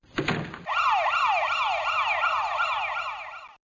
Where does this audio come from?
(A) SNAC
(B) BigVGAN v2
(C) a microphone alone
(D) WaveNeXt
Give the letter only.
C